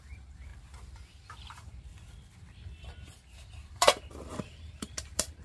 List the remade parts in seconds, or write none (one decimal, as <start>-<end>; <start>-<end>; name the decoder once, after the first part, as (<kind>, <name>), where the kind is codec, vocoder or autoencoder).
0.0-0.5 (vocoder, BigVGAN v2); 1.5-1.9; 3.7-5.4